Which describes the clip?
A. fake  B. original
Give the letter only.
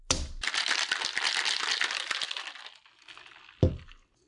B